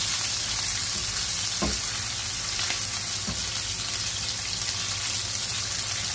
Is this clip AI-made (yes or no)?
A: no